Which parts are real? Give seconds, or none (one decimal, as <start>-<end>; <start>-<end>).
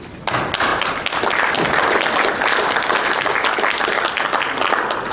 0.0-5.1